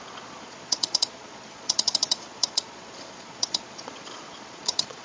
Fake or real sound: fake